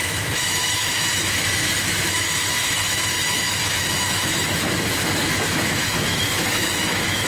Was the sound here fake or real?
fake